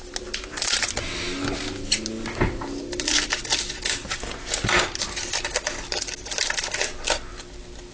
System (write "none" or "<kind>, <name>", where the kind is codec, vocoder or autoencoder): none